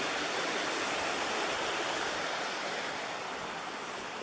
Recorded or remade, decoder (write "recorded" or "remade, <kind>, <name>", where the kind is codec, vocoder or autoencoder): recorded